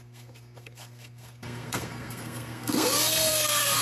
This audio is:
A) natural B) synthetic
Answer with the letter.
B